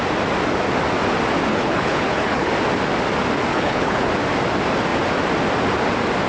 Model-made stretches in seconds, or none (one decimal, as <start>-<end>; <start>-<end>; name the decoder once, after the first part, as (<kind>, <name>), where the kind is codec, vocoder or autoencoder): 1.5-2.5 (codec, HILCodec); 3.5-4.1